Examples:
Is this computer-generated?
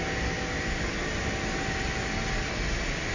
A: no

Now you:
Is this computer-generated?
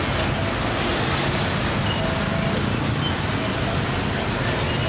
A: no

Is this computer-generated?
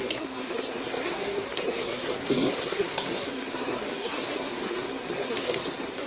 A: yes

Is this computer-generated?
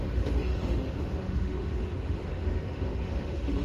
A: yes